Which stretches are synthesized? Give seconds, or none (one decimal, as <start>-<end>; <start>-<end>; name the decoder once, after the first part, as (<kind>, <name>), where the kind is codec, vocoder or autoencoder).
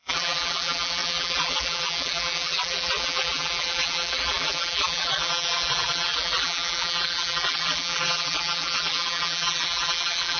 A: 0.0-10.4 (vocoder, BigVGAN v2)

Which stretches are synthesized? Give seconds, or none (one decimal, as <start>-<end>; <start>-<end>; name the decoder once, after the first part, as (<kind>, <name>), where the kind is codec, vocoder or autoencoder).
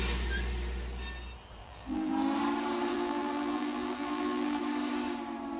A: 1.6-2.1 (vocoder, BigVGAN v2); 2.9-4.6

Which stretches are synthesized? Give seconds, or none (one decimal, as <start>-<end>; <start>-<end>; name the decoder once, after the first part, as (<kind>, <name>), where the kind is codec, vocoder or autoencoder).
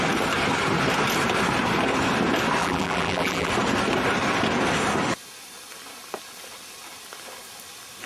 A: 2.6-3.5 (vocoder, BigVGAN v2)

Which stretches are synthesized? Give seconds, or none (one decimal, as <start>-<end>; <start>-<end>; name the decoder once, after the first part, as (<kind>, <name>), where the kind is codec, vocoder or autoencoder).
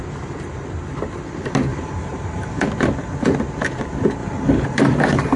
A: 1.7-2.6 (vocoder, BigVGAN v2); 4.2-4.8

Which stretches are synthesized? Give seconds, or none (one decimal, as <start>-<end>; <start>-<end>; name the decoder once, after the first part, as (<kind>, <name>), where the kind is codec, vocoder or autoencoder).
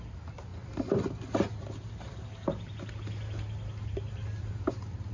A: none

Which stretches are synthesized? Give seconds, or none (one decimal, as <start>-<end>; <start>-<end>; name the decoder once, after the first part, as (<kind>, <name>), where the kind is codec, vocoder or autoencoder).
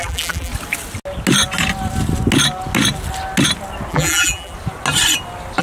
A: 0.0-0.5 (vocoder, BigVGAN v2); 3.9-4.5